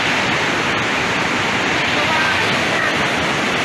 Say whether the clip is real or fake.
real